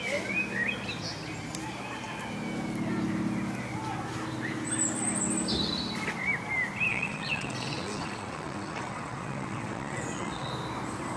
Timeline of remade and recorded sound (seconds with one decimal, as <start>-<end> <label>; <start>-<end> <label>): 0.0-6.9 recorded; 6.9-10.5 remade; 10.5-11.2 recorded